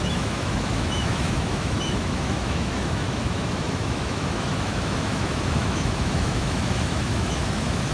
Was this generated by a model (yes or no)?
yes